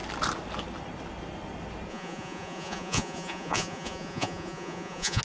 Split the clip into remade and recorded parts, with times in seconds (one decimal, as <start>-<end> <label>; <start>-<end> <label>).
0.0-1.9 recorded; 1.9-5.2 remade